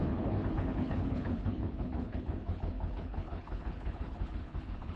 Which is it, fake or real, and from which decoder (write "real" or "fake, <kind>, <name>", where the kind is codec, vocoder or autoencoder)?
fake, codec, HILCodec